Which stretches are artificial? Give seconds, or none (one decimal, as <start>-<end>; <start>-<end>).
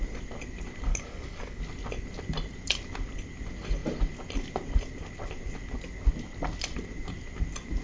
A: 0.9-1.6